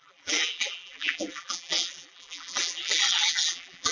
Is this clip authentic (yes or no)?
no